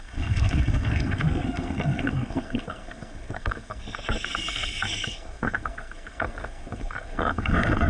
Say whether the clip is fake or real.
fake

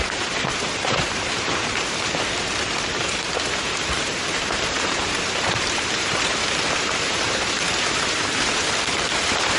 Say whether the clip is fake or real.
fake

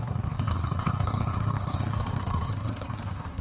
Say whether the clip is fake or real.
fake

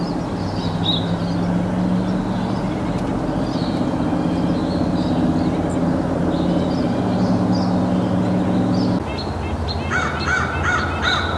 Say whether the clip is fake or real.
real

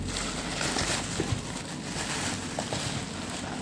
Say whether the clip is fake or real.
real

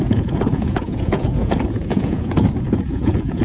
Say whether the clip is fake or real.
fake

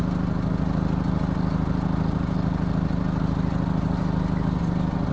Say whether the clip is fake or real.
real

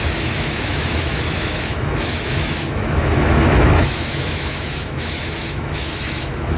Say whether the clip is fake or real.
fake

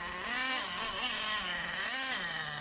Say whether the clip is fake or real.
real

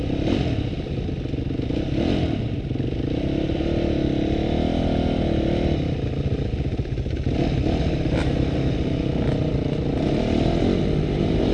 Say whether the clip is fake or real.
real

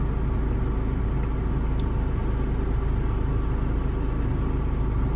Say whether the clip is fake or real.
real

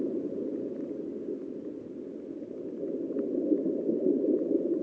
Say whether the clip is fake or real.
real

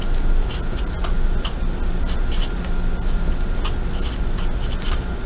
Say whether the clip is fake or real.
real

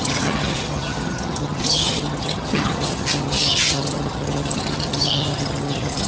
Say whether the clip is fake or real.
fake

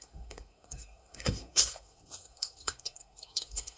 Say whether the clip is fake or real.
fake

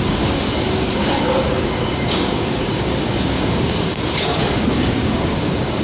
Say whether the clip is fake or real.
fake